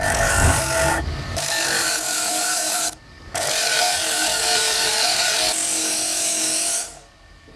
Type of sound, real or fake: fake